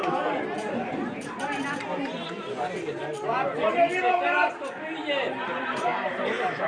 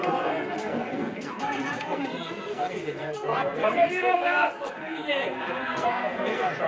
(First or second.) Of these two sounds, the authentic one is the first